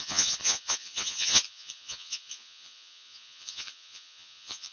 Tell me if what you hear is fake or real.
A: fake